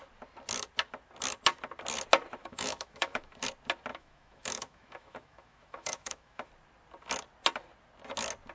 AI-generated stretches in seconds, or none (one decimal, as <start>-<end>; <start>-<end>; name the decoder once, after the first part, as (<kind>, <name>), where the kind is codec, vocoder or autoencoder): 2.4-3.4 (autoencoder, DAC-VAE); 3.9-6.5